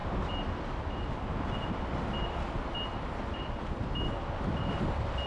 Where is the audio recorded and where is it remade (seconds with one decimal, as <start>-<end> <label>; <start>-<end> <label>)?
0.0-5.3 recorded